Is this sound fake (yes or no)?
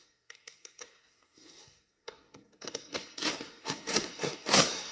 yes